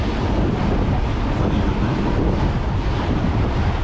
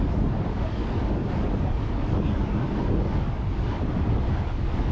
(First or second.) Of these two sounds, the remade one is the second